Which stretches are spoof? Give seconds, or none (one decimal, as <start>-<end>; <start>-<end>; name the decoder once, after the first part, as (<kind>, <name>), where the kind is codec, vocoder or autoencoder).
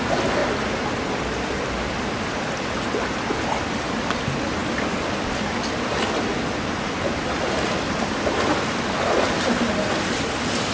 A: none